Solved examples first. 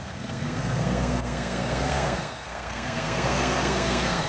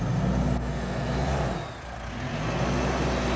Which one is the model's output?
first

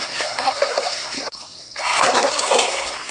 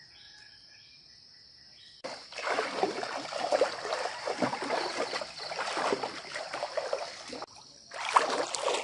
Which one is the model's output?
first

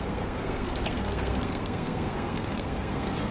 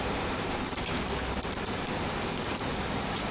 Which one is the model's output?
first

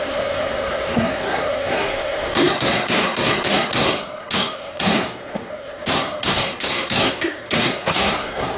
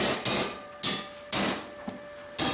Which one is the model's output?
first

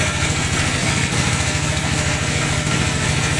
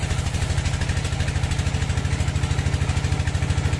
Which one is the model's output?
first